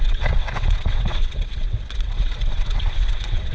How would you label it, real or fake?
fake